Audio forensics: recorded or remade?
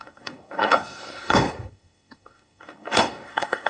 remade